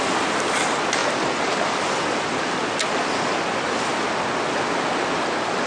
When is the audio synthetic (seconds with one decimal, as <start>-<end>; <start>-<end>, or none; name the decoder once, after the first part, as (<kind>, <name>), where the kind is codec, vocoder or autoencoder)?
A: none